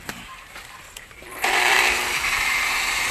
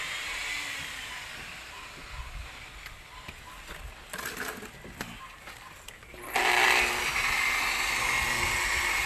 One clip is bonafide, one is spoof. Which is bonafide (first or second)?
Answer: second